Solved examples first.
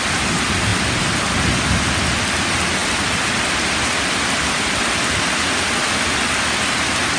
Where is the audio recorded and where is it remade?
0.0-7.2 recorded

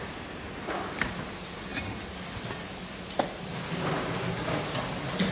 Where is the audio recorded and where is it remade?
0.0-5.3 recorded

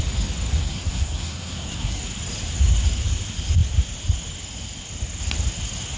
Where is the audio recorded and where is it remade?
0.0-0.6 recorded; 0.6-2.0 remade; 2.0-6.0 recorded

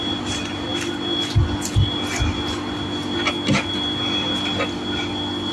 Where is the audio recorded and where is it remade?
0.0-5.5 recorded

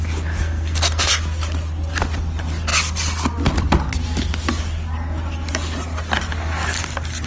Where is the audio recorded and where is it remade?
0.0-0.4 recorded; 0.4-1.1 remade; 1.1-7.3 recorded

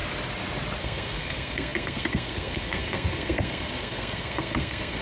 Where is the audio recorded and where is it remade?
0.0-0.8 recorded; 0.8-5.0 remade

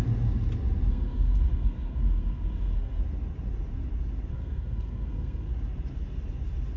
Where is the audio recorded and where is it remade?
0.0-0.9 recorded; 0.9-3.0 remade; 3.0-4.3 recorded; 4.3-5.5 remade; 5.5-6.8 recorded